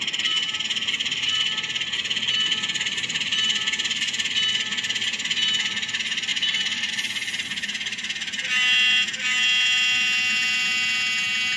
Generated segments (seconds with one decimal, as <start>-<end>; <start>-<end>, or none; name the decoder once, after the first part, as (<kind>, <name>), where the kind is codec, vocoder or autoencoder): 6.3-6.9 (vocoder, Vocos)